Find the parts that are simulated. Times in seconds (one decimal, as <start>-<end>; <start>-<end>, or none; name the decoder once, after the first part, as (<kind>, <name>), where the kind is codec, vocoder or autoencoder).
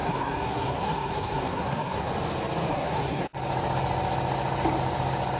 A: 0.0-2.1 (codec, SNAC); 2.7-3.2